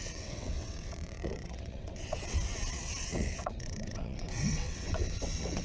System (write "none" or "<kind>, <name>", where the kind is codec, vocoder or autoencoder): vocoder, WaveNeXt